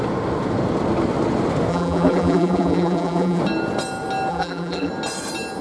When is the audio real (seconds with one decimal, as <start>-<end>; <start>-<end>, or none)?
0.0-1.7; 3.4-4.3; 4.9-5.6